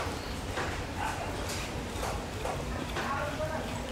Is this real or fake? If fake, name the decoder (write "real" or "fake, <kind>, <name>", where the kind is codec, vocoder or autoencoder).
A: fake, vocoder, BigVGAN v2